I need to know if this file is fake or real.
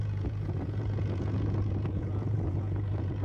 fake